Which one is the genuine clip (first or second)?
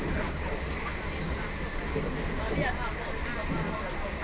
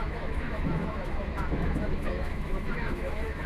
first